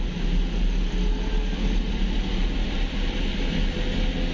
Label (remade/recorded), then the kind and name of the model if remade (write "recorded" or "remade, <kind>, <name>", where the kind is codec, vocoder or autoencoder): recorded